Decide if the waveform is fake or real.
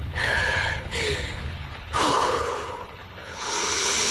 fake